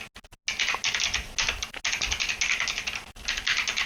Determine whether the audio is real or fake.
real